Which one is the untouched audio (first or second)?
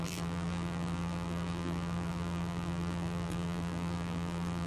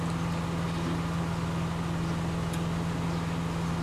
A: second